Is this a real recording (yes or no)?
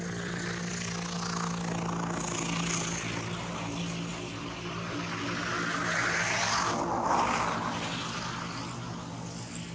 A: yes